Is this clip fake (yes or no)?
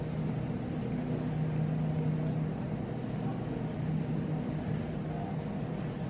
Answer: no